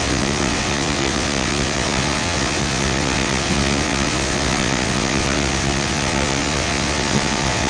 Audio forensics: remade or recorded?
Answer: remade